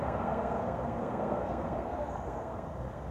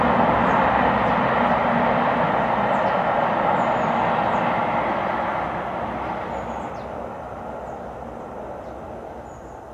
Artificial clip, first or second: first